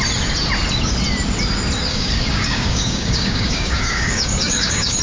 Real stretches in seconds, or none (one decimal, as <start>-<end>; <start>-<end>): 0.0-1.9